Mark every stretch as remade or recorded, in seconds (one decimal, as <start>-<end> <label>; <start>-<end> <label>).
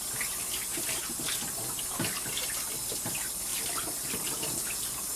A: 0.0-3.1 recorded; 3.1-5.2 remade